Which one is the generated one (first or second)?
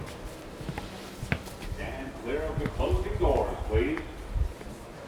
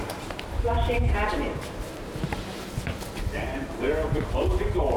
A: second